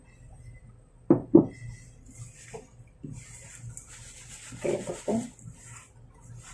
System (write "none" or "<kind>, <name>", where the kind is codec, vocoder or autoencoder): none